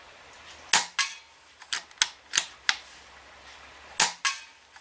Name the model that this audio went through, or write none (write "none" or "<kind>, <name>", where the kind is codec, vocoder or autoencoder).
none